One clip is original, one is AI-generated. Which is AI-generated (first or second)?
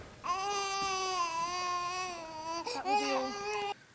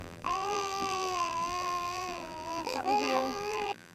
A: second